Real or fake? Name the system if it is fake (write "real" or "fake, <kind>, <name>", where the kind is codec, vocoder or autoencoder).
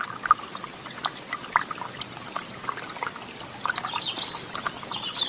real